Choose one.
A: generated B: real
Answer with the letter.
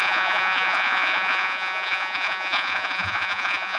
A